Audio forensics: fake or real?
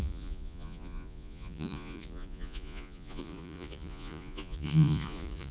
fake